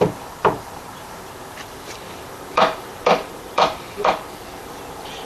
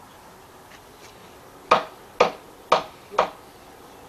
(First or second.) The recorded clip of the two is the second